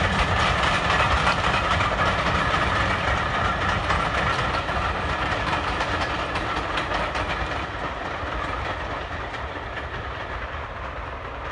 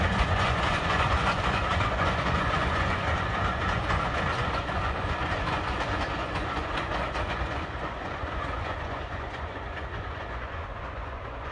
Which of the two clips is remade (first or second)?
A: second